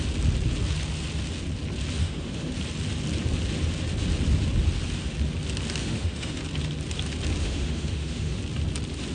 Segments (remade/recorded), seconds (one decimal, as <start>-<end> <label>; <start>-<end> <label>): 0.0-2.0 recorded; 2.0-2.5 remade; 2.5-5.8 recorded; 5.8-6.4 remade; 6.4-7.4 recorded; 7.4-8.4 remade; 8.4-9.1 recorded